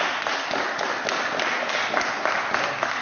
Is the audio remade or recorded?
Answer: recorded